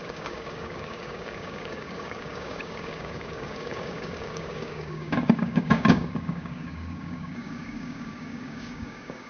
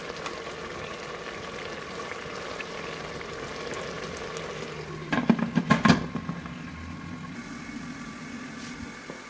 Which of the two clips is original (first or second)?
second